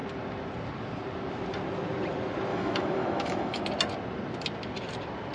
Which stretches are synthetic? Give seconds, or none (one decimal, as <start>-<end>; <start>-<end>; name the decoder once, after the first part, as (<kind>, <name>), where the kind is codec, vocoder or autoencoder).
2.5-3.6 (autoencoder, DAC-VAE)